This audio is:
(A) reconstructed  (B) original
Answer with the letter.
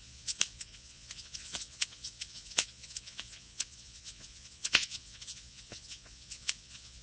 A